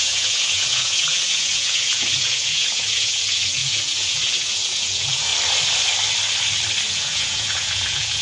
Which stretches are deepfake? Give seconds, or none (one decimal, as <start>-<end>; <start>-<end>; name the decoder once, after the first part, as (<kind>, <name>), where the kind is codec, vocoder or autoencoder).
0.0-5.3 (vocoder, Vocos); 6.9-8.2